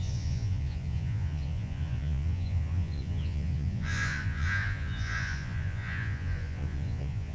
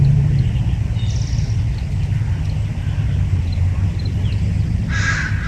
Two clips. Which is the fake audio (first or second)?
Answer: first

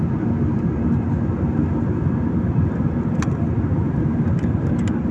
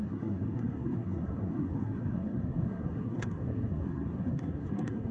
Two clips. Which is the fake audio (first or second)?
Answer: second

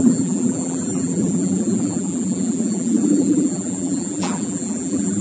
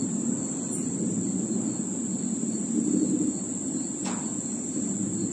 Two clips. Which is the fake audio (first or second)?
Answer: first